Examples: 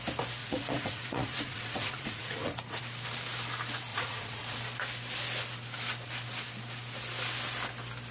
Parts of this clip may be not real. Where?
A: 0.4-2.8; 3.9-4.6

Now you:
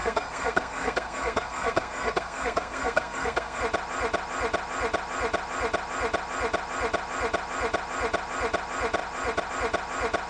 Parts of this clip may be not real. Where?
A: 0.0-3.6

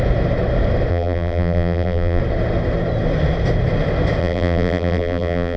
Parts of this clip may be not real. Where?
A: 0.9-2.2; 4.2-5.6

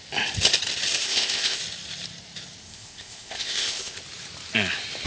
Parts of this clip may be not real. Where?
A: 1.0-1.6; 2.6-4.0